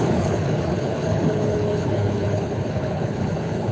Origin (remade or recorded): remade